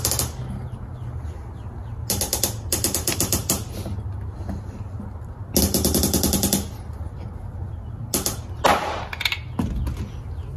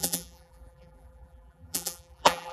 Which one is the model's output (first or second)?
second